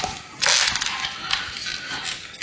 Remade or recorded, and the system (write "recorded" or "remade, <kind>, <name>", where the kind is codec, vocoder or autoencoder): recorded